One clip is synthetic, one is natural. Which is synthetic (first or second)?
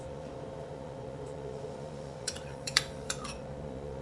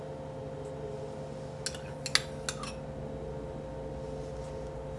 first